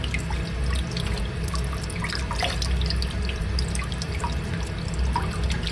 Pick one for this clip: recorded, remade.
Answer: recorded